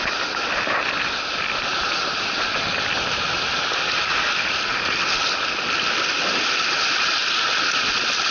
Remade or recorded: recorded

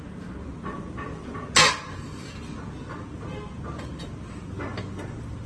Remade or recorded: recorded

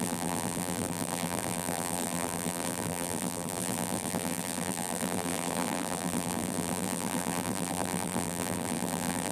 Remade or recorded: remade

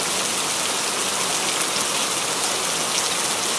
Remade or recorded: recorded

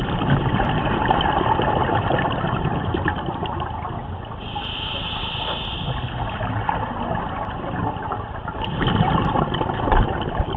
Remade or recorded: recorded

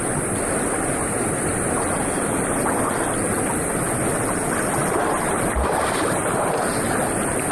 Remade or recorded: recorded